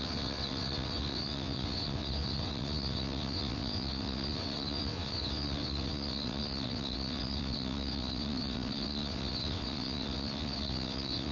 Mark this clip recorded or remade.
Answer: remade